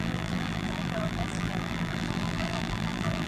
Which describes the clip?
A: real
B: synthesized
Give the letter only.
B